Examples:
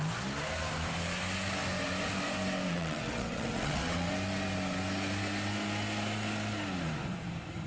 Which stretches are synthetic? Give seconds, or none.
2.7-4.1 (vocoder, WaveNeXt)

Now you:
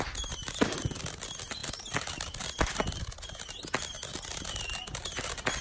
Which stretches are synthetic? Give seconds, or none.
none

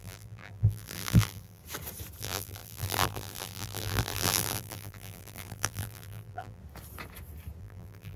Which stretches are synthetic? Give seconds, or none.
0.0-1.6 (vocoder, BigVGAN v2); 2.2-6.6; 7.6-8.2

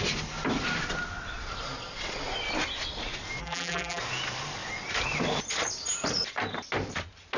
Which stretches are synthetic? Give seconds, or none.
3.4-4.0 (vocoder, BigVGAN v2)

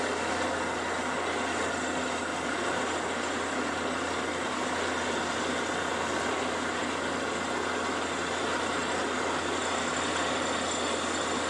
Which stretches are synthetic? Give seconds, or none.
2.3-2.8 (vocoder, BigVGAN v2)

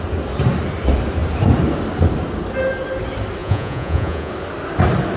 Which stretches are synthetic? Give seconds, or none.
3.4-4.3 (vocoder, Vocos)